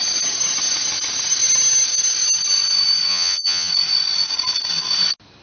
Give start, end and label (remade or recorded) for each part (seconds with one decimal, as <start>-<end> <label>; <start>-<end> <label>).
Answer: 0.0-3.1 recorded; 3.1-3.7 remade; 3.7-5.4 recorded

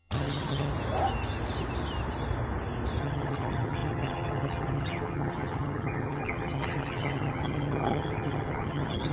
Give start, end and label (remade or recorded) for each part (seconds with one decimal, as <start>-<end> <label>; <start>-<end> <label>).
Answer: 0.0-0.7 remade; 0.7-3.0 recorded; 3.0-9.1 remade

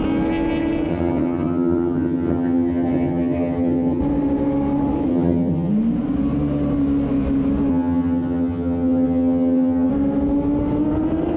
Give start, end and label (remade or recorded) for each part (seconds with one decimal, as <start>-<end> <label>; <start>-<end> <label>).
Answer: 0.0-0.9 recorded; 0.9-4.0 remade; 4.0-5.1 recorded; 5.1-5.7 remade; 5.7-7.7 recorded; 7.7-9.9 remade; 9.9-11.4 recorded

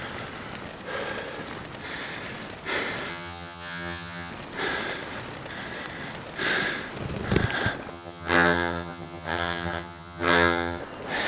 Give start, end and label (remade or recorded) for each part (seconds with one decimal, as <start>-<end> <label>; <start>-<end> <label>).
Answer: 0.0-3.1 recorded; 3.1-4.3 remade; 4.3-7.9 recorded; 7.9-10.8 remade; 10.8-11.3 recorded

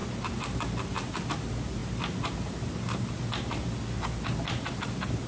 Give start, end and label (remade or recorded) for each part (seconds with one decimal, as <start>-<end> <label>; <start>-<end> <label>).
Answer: 0.0-5.3 recorded